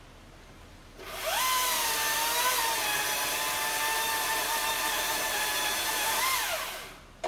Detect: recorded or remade recorded